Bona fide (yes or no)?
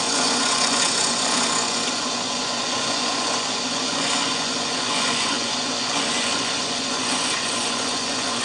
no